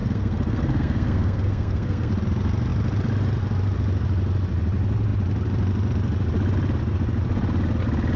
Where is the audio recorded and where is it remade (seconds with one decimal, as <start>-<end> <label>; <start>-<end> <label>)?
0.0-2.1 remade; 2.1-8.2 recorded